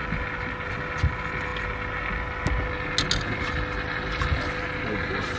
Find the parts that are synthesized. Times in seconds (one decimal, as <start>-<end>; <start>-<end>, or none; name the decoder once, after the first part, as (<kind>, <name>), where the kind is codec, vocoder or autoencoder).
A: none